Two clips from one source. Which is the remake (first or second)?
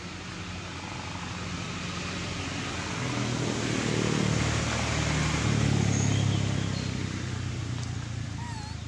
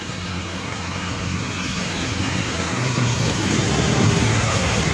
second